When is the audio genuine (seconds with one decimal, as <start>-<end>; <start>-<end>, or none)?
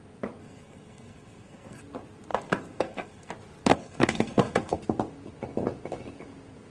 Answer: 0.0-0.4; 1.8-2.3; 3.3-3.7; 4.8-6.7